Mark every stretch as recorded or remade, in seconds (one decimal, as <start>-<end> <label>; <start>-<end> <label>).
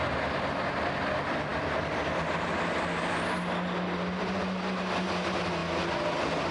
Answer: 0.0-6.5 recorded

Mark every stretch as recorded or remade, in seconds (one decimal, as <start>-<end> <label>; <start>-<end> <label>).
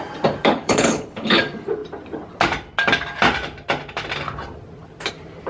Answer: 0.0-0.5 recorded; 0.5-1.4 remade; 1.4-5.5 recorded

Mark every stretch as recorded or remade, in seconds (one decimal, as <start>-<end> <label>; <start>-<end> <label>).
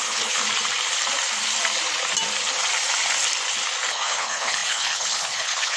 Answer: 0.0-0.4 remade; 0.4-3.9 recorded; 3.9-5.8 remade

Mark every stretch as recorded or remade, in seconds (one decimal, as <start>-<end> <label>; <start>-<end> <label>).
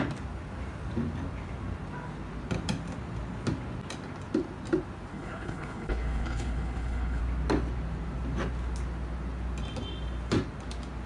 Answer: 0.0-5.1 recorded; 5.1-7.2 remade; 7.2-11.1 recorded